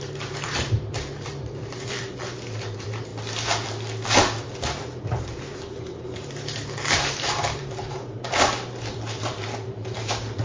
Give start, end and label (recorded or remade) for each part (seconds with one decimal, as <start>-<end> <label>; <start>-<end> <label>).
0.0-3.1 remade; 3.1-5.1 recorded; 5.1-10.4 remade